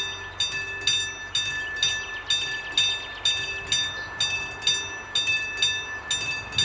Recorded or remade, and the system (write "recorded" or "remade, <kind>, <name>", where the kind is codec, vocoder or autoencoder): recorded